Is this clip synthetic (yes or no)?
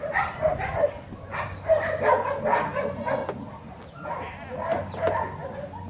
no